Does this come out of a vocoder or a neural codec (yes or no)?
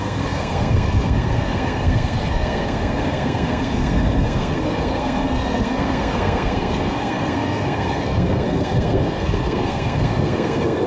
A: yes